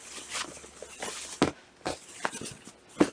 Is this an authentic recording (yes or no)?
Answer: yes